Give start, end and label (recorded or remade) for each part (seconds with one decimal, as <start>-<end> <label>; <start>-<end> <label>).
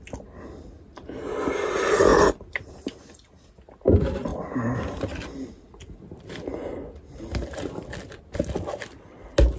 0.0-9.6 recorded